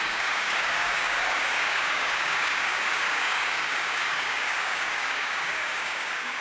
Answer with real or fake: fake